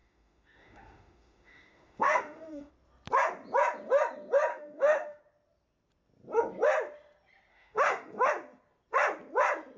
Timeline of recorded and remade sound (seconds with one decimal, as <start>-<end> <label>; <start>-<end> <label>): 0.0-2.7 remade; 2.7-4.5 recorded; 4.5-5.2 remade; 5.2-7.5 recorded; 7.5-8.3 remade; 8.3-9.8 recorded